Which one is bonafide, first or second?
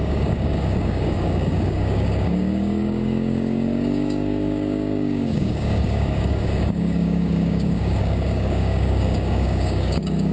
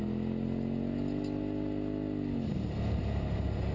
second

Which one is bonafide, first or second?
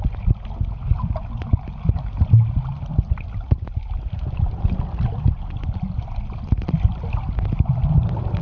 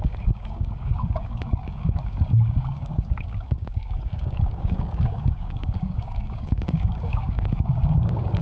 first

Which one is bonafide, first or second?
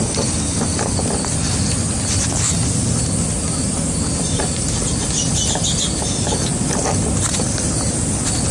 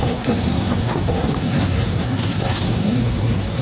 first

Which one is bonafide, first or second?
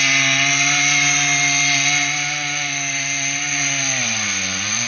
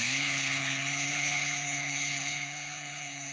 first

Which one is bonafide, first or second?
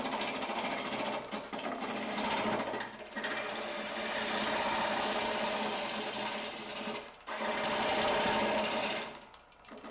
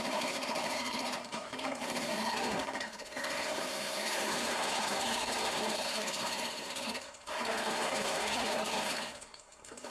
first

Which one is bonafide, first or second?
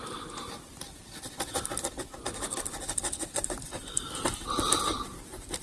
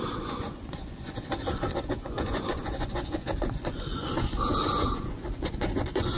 first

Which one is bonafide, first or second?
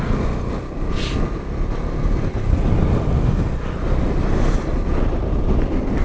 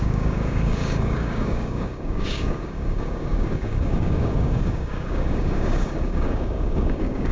first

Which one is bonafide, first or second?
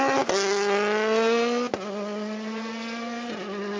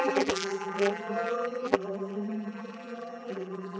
first